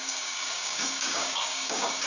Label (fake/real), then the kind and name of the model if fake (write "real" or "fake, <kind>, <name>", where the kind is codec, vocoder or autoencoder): fake, codec, DAC